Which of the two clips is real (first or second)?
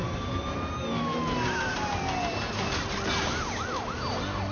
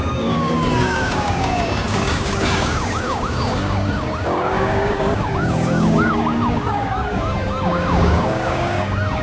first